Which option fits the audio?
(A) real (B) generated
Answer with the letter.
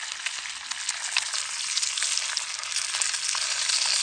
A